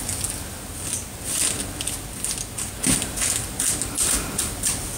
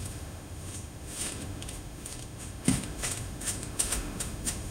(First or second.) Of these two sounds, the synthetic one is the second